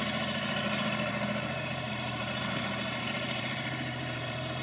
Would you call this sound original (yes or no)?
no